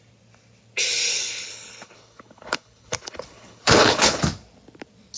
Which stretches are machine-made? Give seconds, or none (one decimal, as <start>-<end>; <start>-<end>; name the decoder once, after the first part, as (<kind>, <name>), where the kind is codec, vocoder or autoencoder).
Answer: 1.1-4.2 (codec, HILCodec)